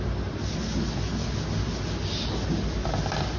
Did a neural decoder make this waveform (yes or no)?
no